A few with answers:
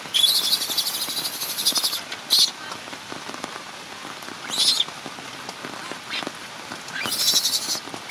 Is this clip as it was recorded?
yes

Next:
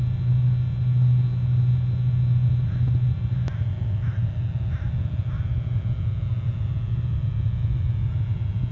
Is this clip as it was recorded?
yes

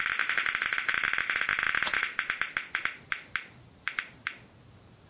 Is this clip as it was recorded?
yes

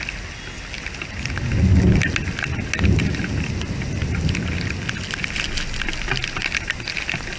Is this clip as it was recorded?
yes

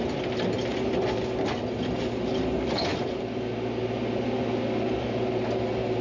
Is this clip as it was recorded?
yes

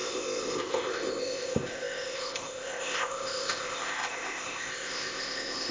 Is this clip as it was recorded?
no